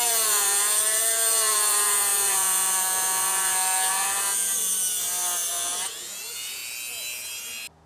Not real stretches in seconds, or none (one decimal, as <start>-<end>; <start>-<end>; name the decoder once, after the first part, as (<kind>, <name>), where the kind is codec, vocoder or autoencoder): 0.0-4.5 (vocoder, Vocos); 5.5-6.6